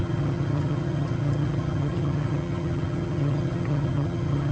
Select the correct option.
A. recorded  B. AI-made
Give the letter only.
B